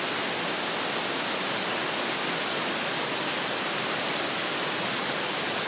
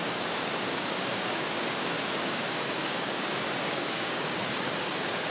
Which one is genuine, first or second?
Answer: first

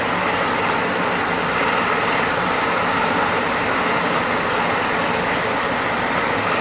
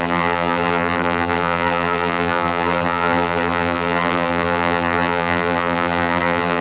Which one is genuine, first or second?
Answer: first